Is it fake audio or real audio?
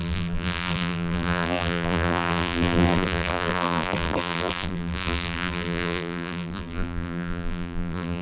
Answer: fake